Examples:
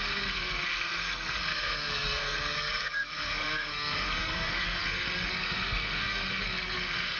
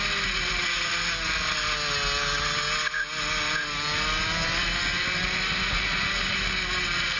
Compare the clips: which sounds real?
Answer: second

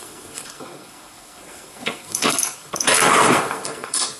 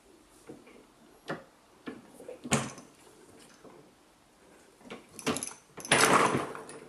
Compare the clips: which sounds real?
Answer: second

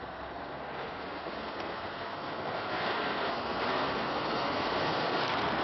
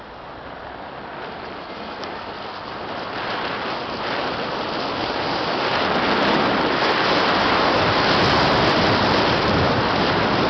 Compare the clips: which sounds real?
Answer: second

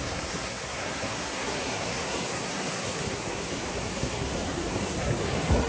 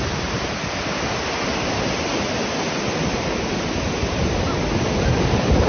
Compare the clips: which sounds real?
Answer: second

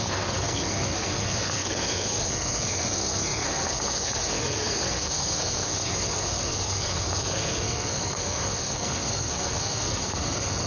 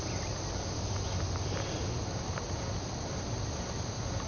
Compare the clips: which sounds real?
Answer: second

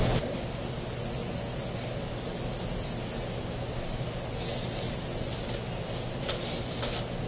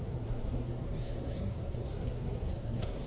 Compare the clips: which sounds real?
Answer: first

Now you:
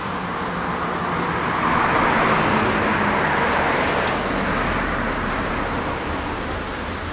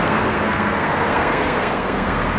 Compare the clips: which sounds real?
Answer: first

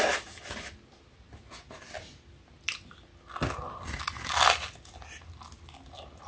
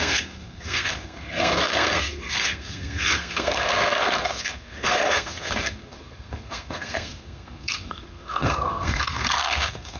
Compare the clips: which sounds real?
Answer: first